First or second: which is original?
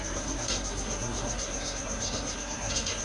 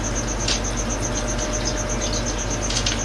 second